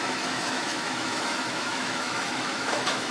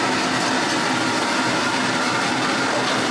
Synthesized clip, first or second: first